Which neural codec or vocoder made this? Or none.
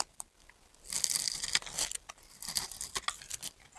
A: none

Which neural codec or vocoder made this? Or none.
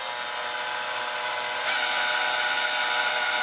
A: none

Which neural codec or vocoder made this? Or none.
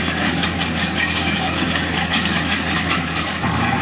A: codec, DAC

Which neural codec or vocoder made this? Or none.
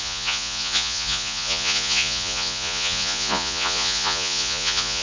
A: vocoder, Vocos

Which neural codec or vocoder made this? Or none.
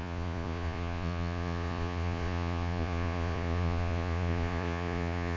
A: vocoder, Vocos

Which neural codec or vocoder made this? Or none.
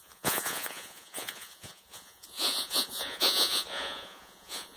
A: vocoder, Vocos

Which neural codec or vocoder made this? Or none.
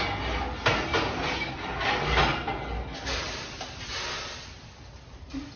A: none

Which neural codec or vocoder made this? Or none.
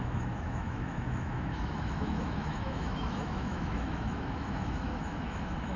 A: autoencoder, DAC-VAE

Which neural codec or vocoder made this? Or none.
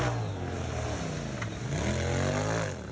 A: none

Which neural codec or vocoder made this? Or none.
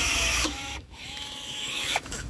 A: autoencoder, DAC-VAE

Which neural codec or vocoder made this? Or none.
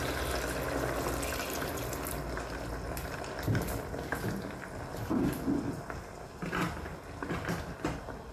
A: none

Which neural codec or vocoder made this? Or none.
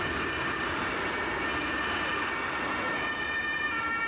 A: none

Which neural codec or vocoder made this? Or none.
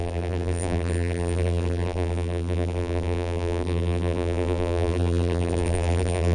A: vocoder, BigVGAN v2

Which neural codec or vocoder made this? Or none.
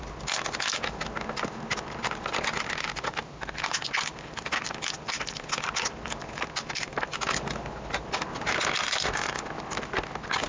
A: none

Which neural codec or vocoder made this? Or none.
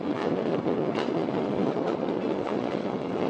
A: vocoder, Vocos